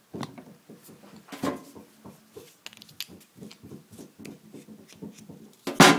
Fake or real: real